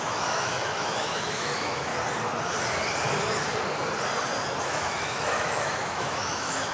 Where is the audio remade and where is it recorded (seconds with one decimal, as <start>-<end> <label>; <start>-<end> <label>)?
0.0-1.9 remade; 1.9-4.6 recorded; 4.6-6.7 remade